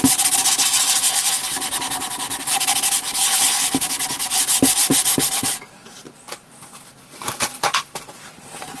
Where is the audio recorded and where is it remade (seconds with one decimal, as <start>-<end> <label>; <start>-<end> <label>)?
0.0-8.8 recorded